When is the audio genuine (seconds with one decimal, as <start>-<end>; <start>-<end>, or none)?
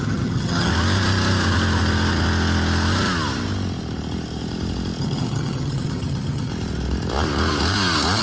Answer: 0.7-5.0; 6.5-8.2